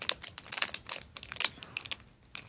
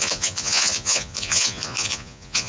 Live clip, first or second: first